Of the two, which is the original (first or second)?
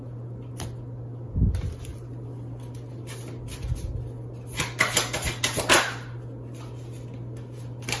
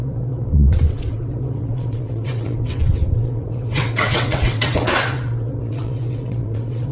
first